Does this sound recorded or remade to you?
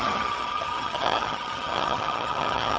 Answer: remade